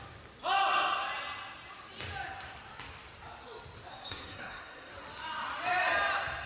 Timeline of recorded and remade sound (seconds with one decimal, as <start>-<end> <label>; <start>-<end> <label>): 0.0-3.9 recorded; 3.9-4.9 remade; 4.9-6.5 recorded